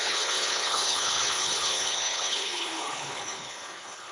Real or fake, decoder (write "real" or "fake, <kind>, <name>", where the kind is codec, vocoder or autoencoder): fake, codec, HILCodec